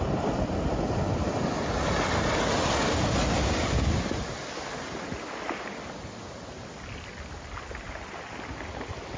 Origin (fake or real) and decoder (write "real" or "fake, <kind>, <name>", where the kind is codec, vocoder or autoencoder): real